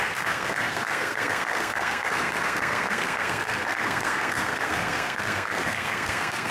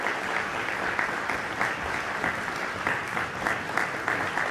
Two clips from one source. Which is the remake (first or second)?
first